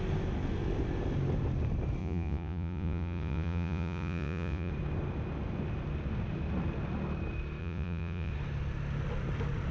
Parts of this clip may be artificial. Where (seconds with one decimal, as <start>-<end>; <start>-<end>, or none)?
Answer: 2.0-4.7; 7.6-8.3